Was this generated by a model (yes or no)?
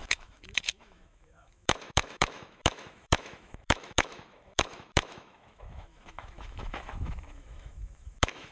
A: yes